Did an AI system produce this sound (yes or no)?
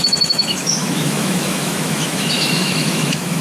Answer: yes